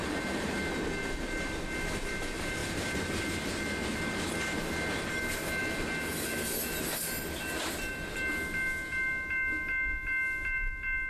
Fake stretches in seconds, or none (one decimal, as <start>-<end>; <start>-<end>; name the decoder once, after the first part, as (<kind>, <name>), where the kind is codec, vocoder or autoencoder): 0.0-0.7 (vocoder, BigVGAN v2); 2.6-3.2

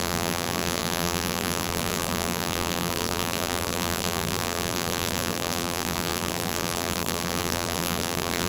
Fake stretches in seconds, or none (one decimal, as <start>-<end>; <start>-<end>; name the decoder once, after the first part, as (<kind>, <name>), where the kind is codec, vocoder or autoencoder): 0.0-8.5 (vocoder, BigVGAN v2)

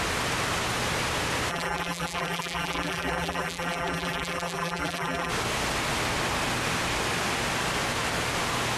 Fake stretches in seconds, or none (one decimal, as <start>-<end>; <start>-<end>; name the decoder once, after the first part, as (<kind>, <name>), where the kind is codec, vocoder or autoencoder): 1.5-5.3 (vocoder, BigVGAN v2)